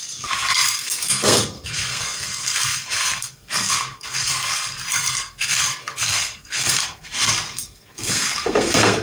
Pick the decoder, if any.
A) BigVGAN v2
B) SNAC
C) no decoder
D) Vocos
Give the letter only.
B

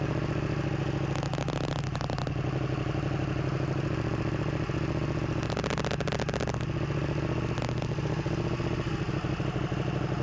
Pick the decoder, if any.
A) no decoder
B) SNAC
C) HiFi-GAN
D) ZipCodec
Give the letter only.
A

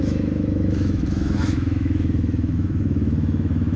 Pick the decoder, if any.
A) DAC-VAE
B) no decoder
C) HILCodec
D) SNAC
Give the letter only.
A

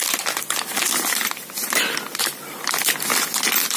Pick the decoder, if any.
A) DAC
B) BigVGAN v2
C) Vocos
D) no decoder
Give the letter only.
D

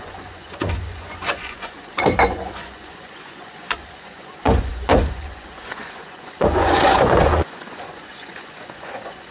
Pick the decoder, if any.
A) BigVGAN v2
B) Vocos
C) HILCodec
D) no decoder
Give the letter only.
B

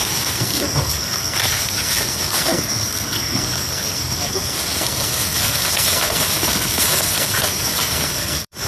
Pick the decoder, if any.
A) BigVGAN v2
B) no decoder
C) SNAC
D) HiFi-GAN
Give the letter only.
C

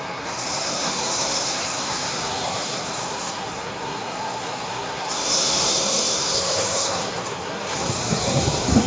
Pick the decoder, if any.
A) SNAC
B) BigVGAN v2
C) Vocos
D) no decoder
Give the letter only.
A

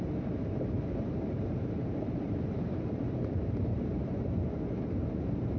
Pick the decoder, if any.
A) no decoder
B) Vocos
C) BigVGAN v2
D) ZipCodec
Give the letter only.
C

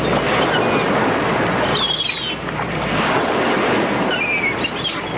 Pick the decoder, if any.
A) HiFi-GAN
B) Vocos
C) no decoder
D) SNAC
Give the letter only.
C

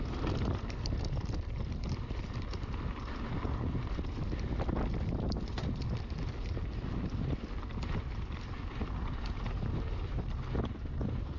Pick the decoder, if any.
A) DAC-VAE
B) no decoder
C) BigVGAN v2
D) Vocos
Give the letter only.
B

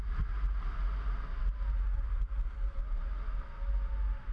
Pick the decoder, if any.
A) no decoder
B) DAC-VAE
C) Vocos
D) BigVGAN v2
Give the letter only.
A